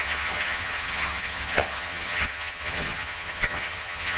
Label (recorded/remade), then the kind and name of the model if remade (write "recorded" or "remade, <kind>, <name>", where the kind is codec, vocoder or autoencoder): remade, vocoder, HiFi-GAN